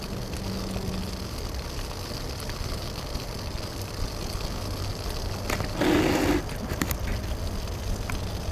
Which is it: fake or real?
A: real